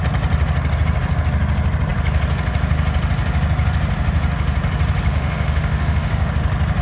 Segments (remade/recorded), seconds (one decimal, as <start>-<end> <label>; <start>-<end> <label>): 0.0-5.1 recorded; 5.1-6.3 remade; 6.3-6.8 recorded